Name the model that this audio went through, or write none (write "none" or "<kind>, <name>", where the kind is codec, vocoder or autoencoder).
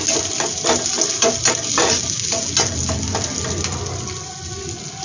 none